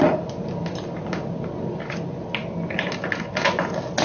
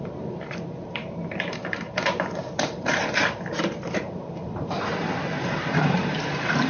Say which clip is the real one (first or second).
first